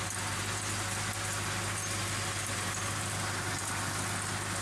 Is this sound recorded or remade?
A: recorded